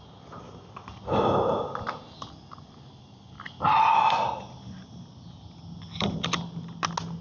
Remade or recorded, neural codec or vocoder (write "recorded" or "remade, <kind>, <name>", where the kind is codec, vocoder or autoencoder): recorded